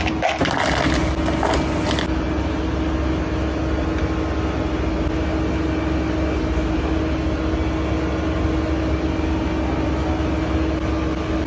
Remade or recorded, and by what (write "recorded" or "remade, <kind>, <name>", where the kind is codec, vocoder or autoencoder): recorded